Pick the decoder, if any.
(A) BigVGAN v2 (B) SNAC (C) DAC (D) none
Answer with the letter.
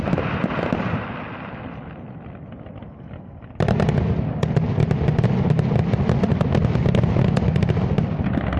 D